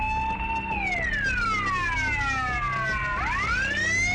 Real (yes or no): yes